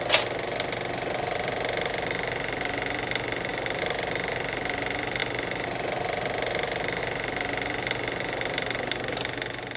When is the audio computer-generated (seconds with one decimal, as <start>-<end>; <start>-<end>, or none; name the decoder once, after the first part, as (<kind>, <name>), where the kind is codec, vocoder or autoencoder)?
3.5-4.3 (vocoder, BigVGAN v2)